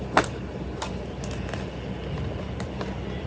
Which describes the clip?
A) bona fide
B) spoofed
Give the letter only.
A